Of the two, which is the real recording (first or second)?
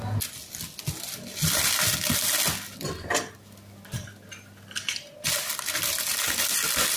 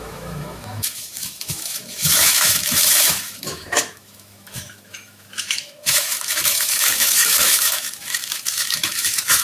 first